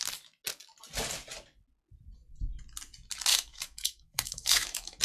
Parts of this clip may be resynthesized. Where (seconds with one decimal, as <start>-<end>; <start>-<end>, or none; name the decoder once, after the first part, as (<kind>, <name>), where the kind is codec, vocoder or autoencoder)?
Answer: 3.3-5.0 (autoencoder, DAC-VAE)